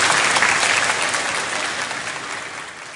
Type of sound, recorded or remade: recorded